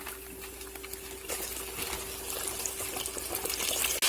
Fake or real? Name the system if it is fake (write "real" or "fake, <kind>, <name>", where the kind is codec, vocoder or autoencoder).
real